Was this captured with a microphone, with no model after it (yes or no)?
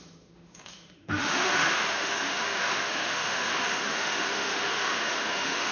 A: no